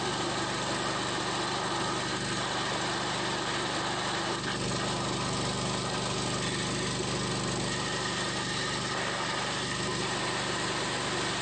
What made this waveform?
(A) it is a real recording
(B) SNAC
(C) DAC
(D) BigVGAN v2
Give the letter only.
A